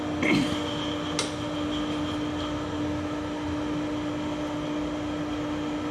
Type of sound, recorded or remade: recorded